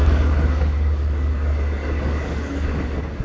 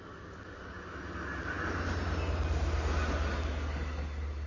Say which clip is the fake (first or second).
first